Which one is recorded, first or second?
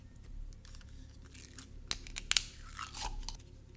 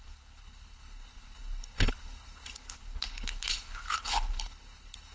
first